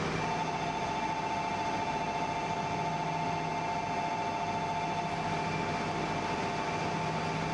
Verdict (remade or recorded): recorded